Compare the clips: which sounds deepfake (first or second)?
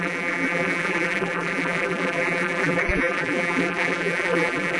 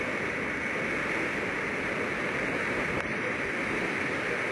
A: first